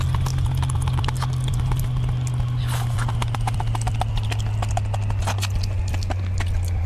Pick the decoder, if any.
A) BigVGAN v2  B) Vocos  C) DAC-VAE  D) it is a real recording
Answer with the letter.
D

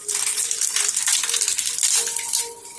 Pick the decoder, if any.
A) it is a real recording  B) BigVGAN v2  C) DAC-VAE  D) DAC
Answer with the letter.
A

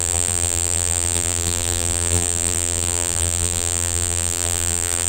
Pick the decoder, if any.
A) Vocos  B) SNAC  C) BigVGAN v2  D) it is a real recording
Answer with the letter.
C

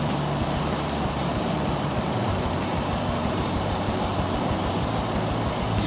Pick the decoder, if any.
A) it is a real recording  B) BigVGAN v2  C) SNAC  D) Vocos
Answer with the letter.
B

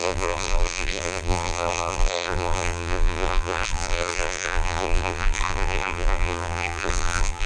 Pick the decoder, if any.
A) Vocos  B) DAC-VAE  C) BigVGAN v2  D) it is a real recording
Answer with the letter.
C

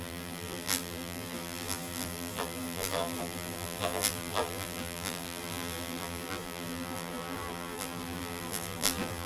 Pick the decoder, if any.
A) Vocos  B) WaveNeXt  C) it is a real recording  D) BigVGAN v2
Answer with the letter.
D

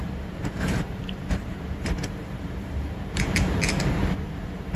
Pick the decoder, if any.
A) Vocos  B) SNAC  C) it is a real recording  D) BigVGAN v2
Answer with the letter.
D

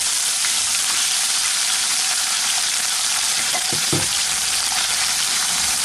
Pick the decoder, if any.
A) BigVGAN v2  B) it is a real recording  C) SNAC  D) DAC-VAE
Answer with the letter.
A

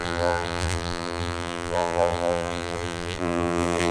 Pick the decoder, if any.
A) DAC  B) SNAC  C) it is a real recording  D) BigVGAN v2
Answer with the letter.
D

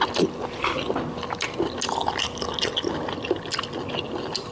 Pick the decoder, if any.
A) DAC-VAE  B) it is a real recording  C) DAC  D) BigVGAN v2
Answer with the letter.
B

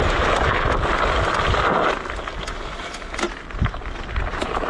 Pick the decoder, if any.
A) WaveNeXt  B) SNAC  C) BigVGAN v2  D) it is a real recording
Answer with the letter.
D